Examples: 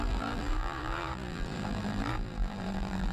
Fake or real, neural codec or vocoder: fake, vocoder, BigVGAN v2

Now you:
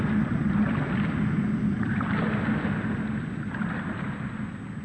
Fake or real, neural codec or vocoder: real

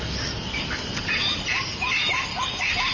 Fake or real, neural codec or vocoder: real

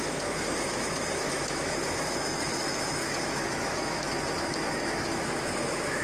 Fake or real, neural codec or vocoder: fake, autoencoder, DAC-VAE